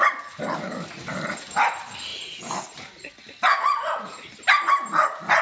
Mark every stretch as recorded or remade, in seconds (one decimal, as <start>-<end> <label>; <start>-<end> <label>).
0.0-3.5 recorded; 3.5-4.3 remade; 4.3-5.4 recorded